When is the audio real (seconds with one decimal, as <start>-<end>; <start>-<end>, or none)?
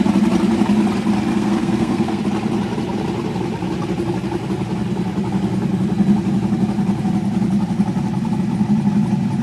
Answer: 0.0-1.3; 2.2-9.4